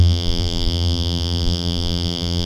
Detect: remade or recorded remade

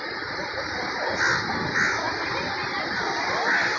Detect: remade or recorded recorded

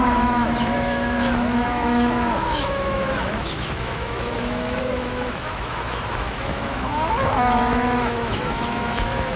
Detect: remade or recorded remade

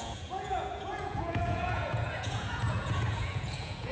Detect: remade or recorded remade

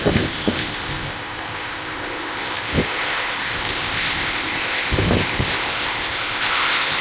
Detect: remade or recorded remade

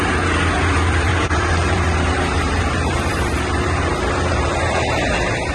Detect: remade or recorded remade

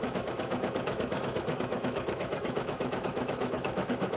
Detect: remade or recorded remade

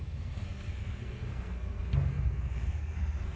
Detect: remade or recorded remade